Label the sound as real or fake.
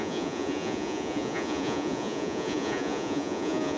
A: fake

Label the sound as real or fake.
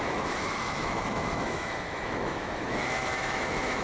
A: fake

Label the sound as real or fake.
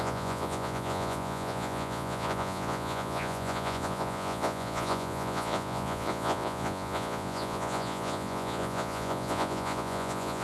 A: fake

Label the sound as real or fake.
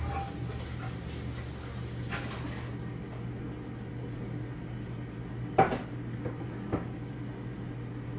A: real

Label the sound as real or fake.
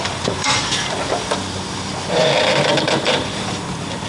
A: fake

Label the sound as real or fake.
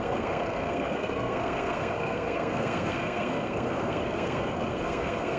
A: fake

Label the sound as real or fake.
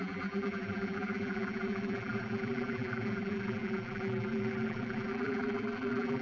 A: fake